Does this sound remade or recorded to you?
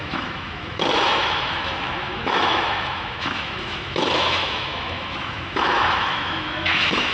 remade